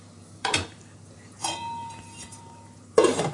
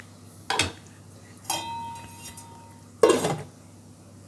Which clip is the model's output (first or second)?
first